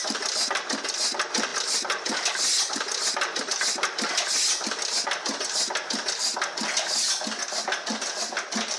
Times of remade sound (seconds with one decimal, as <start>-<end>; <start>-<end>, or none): none